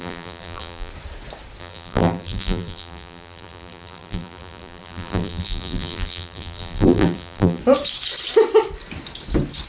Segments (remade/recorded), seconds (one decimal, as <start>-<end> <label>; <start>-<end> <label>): 0.0-0.9 remade; 0.9-1.6 recorded; 1.6-7.6 remade; 7.6-9.7 recorded